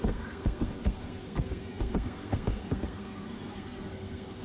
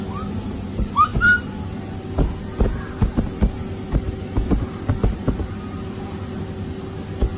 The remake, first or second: first